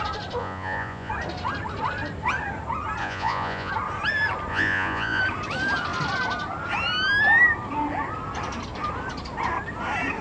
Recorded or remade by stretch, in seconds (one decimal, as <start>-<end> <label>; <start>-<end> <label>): 0.0-0.4 recorded; 0.4-1.1 remade; 1.1-3.0 recorded; 3.0-3.7 remade; 3.7-4.5 recorded; 4.5-5.2 remade; 5.2-10.2 recorded